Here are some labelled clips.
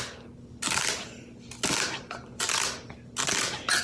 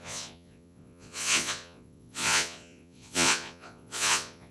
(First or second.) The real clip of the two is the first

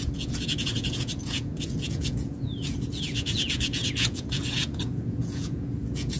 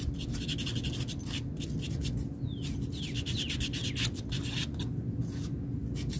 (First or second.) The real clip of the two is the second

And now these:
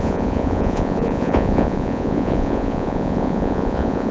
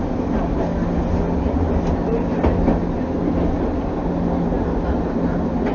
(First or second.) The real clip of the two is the second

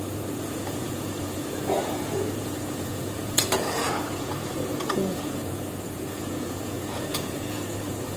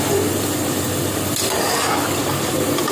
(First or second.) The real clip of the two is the second